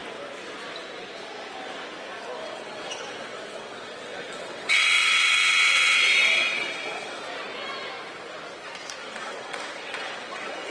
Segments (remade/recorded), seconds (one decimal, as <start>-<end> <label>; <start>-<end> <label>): 0.0-2.4 recorded; 2.4-7.2 remade; 7.2-9.0 recorded; 9.0-10.7 remade